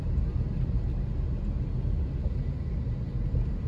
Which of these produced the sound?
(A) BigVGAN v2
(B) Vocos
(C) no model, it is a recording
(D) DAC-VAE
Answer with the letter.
C